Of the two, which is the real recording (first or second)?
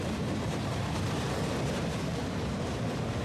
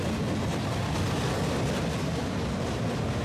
second